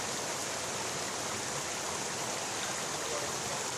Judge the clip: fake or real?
real